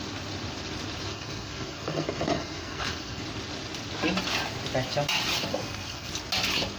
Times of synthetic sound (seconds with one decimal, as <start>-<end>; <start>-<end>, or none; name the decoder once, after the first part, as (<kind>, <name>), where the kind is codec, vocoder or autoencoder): 1.1-3.2 (codec, SNAC); 5.5-6.1